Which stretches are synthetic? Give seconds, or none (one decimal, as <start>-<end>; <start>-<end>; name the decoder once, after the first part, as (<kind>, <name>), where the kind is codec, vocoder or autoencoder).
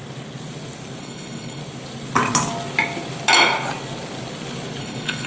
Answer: 1.0-1.6 (codec, HILCodec); 4.8-5.3